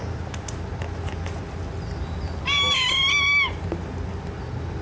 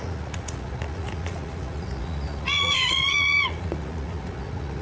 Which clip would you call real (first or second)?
first